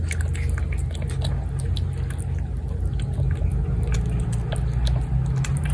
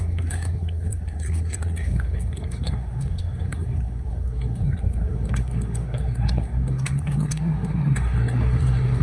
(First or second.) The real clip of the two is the first